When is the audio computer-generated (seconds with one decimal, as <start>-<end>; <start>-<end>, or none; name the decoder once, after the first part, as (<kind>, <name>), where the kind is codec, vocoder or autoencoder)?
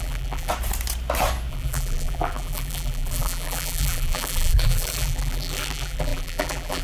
0.0-0.5 (vocoder, BigVGAN v2); 1.5-6.8